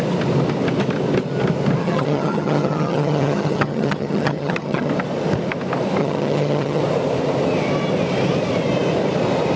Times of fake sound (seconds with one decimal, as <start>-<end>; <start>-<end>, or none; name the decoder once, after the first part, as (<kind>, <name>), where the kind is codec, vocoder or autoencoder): 1.8-4.9 (vocoder, HiFi-GAN); 6.0-6.8